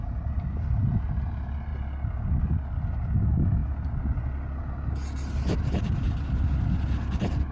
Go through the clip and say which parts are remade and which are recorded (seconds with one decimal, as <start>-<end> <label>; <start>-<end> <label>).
0.0-7.5 recorded

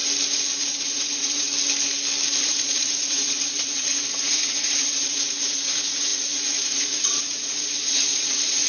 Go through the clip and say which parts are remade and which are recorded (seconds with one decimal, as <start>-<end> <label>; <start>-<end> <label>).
0.0-0.6 recorded; 0.6-1.5 remade; 1.5-2.4 recorded; 2.4-8.7 remade